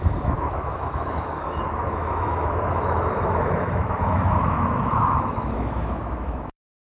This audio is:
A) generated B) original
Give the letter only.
A